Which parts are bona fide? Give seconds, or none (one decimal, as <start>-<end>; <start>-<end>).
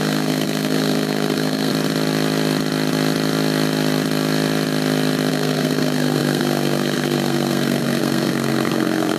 1.7-5.3